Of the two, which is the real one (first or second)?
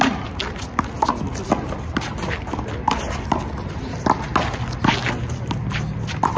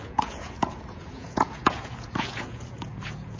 first